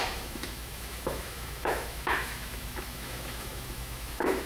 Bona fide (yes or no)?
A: no